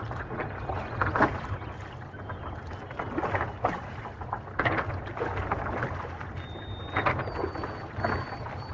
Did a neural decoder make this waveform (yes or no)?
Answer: no